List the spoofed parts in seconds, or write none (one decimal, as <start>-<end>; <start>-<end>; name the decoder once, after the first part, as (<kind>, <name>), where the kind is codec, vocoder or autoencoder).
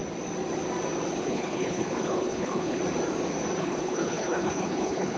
1.2-2.8 (codec, HILCodec); 3.6-5.2